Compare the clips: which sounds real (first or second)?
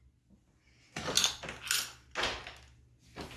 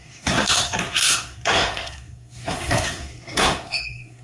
first